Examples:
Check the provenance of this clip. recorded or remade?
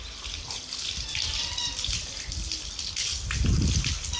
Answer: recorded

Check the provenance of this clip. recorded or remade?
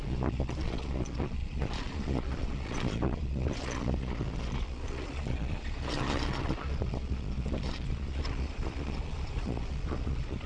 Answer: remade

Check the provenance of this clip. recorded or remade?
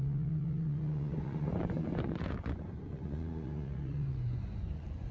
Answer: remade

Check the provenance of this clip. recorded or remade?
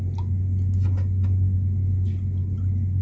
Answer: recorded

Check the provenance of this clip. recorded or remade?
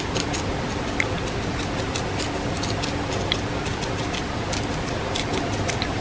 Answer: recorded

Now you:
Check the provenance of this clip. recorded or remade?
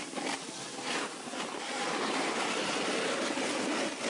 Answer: recorded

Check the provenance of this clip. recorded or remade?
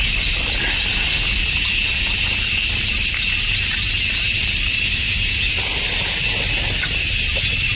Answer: recorded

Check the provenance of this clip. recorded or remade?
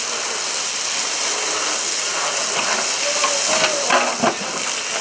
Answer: recorded